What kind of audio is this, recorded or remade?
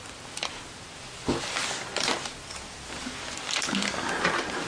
recorded